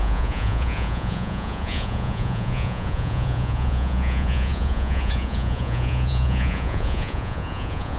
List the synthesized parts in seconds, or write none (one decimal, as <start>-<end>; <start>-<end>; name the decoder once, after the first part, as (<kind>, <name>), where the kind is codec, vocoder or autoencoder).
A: 0.0-8.0 (vocoder, Vocos)